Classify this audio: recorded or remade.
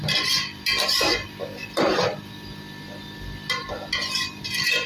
recorded